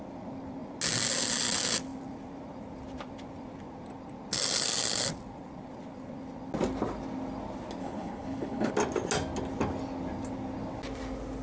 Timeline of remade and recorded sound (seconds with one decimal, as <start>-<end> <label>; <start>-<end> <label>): 0.0-7.8 recorded; 7.8-8.7 remade; 8.7-11.4 recorded